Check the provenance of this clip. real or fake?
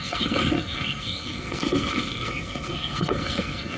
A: fake